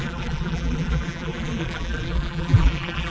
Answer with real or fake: fake